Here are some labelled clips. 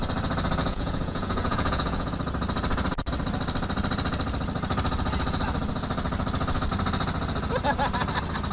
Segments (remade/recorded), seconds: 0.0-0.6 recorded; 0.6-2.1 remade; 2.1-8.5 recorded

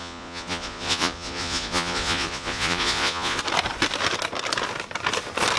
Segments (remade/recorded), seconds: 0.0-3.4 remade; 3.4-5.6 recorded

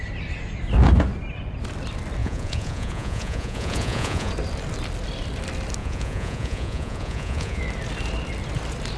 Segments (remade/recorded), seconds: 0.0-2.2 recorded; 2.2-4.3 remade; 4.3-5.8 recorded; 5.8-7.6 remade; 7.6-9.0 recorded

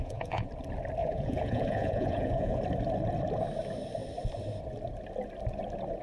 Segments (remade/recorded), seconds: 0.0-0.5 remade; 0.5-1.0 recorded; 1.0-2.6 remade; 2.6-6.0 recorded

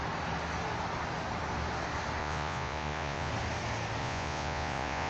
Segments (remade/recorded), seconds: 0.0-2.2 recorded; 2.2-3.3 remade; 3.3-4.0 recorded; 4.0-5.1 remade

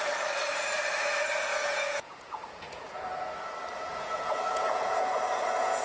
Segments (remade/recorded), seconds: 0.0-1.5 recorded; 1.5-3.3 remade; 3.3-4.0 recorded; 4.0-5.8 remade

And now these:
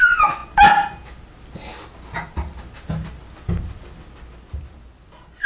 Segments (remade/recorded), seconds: 0.0-5.5 recorded

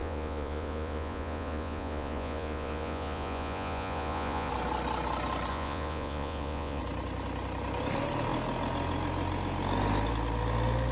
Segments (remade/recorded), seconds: 0.0-4.5 remade; 4.5-5.5 recorded; 5.5-6.8 remade; 6.8-10.9 recorded